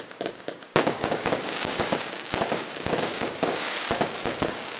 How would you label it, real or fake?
fake